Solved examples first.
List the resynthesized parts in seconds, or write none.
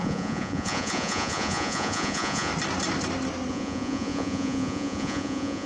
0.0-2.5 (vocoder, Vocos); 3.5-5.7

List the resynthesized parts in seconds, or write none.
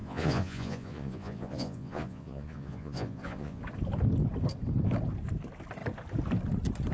0.0-3.6 (vocoder, Vocos)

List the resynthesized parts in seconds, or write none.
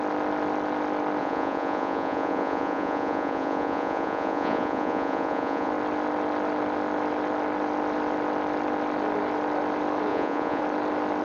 1.2-5.7 (vocoder, Vocos); 10.1-10.6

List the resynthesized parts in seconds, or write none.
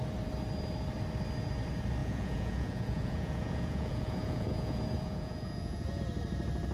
2.0-6.0 (vocoder, Vocos)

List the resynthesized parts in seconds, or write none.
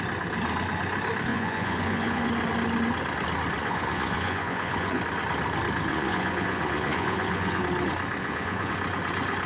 1.3-2.3 (vocoder, Vocos); 3.6-5.0; 5.9-7.6; 8.2-8.7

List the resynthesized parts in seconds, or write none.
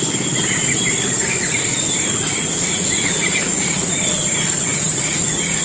2.1-5.6 (vocoder, Vocos)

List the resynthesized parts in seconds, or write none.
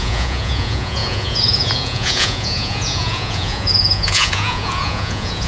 0.0-5.5 (vocoder, Vocos)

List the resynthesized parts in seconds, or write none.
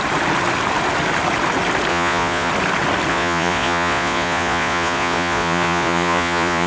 1.9-2.5 (vocoder, Vocos); 3.1-6.7